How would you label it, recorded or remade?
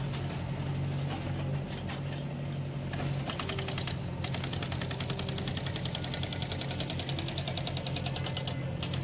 recorded